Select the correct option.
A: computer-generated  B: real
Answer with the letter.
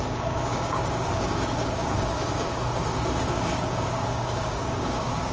A